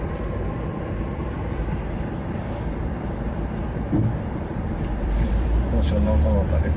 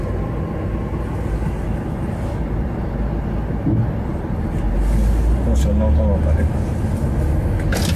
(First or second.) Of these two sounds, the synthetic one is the first